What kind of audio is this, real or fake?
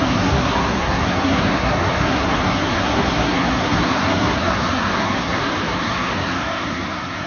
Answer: fake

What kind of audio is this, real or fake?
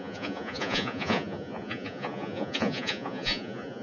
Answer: fake